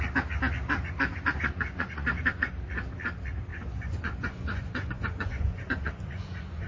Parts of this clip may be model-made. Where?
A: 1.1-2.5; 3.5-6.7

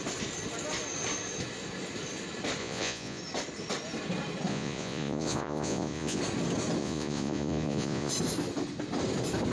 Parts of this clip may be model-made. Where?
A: 2.6-3.2; 4.5-6.2; 6.8-8.1

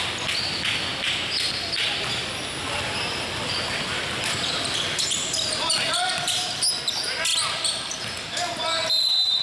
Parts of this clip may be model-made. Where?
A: none

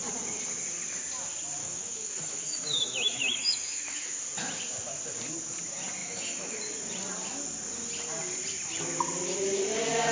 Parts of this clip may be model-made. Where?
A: 1.6-4.2; 6.0-6.6

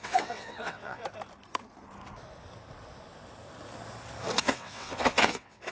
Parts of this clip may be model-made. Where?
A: 0.0-1.0; 4.4-5.7

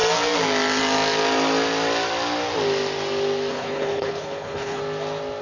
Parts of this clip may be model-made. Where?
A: 3.5-4.8